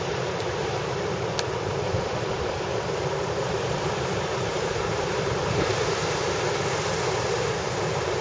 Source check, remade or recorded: remade